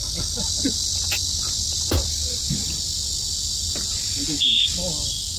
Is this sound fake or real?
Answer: real